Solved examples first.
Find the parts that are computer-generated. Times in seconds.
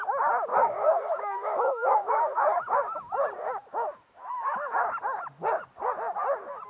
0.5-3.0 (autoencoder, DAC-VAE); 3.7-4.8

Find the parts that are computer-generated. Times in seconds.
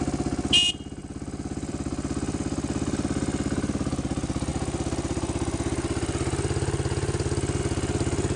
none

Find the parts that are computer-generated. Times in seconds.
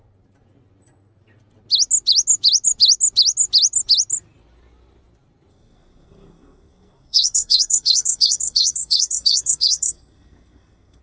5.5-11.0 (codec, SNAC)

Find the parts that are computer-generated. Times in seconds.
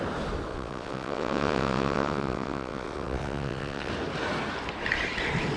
0.5-3.9 (vocoder, WaveNeXt)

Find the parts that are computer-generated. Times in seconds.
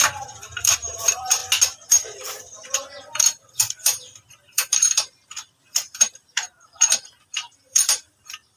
0.0-1.4 (vocoder, BigVGAN v2); 1.9-8.6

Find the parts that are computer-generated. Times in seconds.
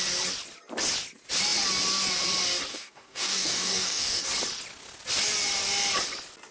2.7-4.2 (codec, DAC)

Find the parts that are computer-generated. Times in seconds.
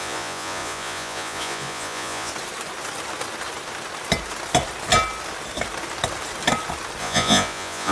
0.0-2.3 (vocoder, Vocos); 7.0-7.9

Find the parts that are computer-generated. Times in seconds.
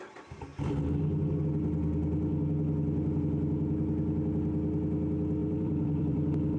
5.4-6.6 (vocoder, BigVGAN v2)